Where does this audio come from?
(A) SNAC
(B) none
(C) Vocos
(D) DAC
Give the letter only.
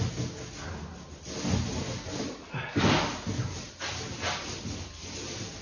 B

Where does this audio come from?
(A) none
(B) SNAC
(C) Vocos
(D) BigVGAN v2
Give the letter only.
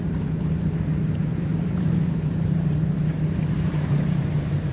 D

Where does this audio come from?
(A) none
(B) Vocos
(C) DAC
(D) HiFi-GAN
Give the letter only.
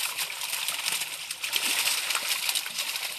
A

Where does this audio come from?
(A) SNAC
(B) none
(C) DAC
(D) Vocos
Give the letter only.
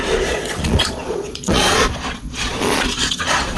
D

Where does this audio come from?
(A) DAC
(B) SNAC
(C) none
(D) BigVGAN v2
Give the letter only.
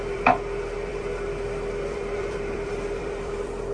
D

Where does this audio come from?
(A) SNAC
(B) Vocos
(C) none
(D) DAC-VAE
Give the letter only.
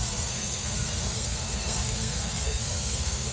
A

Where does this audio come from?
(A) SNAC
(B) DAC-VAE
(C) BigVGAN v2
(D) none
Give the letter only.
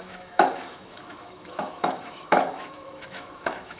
B